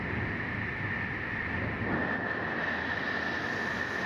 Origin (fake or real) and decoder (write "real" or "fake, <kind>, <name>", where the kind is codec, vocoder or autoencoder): real